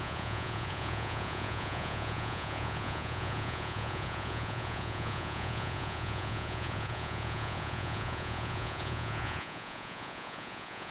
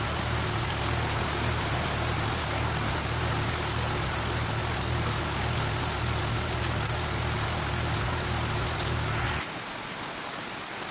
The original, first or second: second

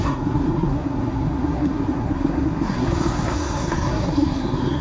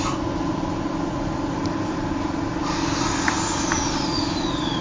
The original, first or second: second